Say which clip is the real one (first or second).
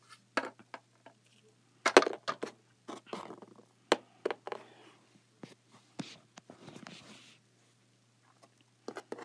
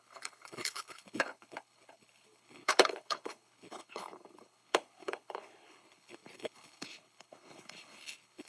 first